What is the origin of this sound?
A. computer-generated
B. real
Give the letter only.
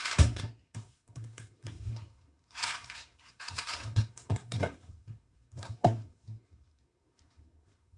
A